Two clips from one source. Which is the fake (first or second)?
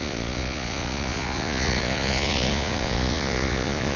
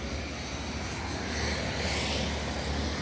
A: first